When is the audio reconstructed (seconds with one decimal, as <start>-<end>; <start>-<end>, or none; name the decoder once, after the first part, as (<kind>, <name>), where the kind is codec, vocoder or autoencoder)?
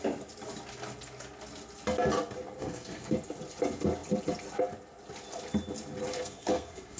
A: 2.6-3.1 (codec, SNAC); 6.1-7.0